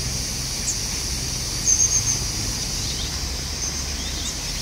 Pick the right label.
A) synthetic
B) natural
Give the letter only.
B